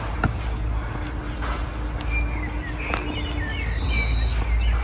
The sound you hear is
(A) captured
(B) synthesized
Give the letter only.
A